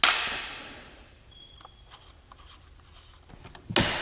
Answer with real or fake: real